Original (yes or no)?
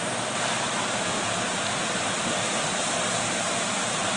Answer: no